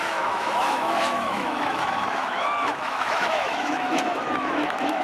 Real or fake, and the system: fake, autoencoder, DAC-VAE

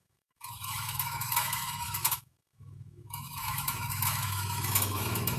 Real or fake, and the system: fake, autoencoder, DAC-VAE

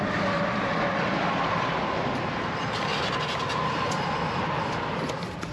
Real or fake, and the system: real